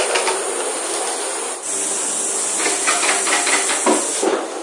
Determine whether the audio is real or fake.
real